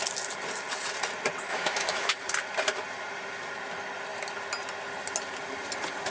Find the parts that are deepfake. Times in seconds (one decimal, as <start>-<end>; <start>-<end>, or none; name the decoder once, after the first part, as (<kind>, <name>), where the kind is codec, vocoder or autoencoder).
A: 1.5-2.1 (autoencoder, DAC-VAE)